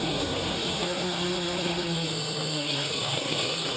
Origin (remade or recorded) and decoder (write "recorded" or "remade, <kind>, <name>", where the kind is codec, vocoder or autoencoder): remade, codec, SNAC